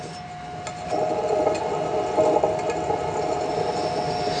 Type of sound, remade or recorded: recorded